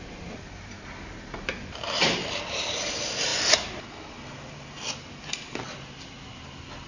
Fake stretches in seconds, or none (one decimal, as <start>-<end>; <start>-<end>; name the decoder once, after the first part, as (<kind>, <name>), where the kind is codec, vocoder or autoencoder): none

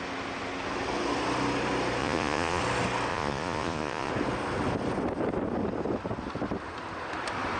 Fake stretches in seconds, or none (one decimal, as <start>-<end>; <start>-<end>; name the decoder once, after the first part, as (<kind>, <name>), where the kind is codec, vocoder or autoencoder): 2.0-2.6 (vocoder, Vocos); 3.1-4.1

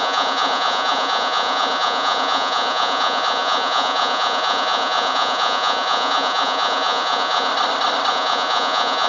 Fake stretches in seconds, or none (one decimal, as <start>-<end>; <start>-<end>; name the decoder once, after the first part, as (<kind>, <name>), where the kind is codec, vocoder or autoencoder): 0.0-7.5 (vocoder, Vocos); 8.1-9.1

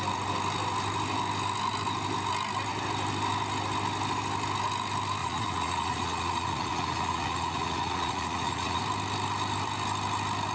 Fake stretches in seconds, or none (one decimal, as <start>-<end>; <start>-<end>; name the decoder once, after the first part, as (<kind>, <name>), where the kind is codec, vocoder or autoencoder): 5.2-8.8 (vocoder, Vocos)

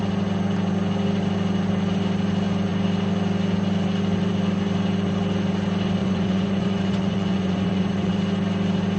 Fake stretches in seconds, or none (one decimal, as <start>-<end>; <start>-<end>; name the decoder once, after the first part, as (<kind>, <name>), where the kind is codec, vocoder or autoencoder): 6.0-8.1 (vocoder, Vocos)

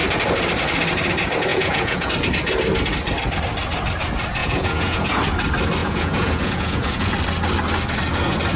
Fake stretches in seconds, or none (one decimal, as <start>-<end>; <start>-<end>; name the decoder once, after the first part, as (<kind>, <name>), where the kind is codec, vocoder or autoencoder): 1.5-2.1 (vocoder, Vocos); 4.4-5.2; 5.8-7.1

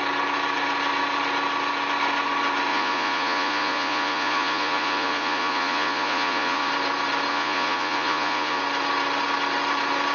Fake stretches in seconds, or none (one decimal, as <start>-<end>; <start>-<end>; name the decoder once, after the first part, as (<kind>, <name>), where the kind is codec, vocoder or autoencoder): 2.7-6.7 (vocoder, Vocos); 7.3-8.6

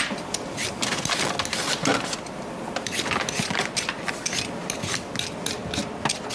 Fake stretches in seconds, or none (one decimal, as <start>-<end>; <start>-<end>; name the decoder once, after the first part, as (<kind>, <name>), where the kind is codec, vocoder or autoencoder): none